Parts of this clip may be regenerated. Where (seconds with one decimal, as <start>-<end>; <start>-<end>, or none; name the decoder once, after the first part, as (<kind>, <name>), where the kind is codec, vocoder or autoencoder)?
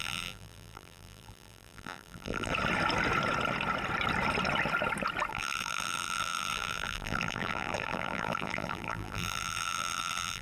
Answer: 0.0-2.5 (vocoder, BigVGAN v2); 5.3-10.4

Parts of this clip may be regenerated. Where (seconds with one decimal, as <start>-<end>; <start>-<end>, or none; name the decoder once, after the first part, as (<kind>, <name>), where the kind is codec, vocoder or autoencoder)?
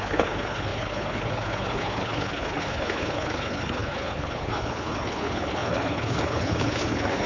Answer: 0.0-7.3 (codec, HILCodec)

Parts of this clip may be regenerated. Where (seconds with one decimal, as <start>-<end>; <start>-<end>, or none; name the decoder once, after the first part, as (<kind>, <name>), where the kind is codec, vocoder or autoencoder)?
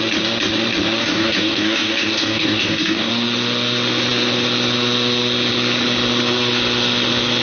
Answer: 1.0-3.1 (codec, DAC)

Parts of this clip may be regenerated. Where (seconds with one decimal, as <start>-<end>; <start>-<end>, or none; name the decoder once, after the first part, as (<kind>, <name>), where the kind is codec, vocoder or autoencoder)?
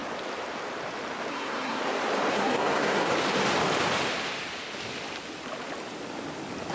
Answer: 1.3-1.8 (codec, SNAC); 2.3-3.1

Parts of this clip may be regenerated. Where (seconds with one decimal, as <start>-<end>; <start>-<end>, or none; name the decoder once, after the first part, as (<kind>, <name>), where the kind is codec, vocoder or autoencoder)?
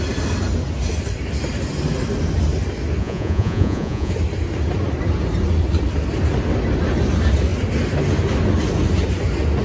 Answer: 3.0-4.1 (vocoder, Vocos)